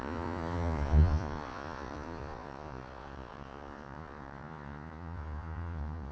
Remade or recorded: remade